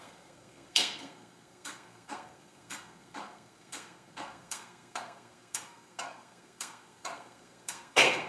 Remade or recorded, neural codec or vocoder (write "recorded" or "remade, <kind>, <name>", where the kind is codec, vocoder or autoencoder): remade, codec, SNAC